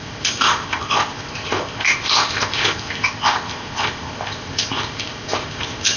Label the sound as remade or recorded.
remade